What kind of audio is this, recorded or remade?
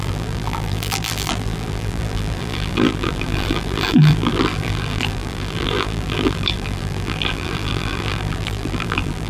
remade